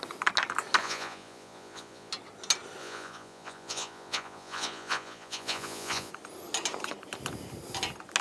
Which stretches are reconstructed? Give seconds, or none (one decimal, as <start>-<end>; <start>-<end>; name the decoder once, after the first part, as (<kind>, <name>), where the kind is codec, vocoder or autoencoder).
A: 0.8-2.1 (vocoder, Vocos); 2.8-6.1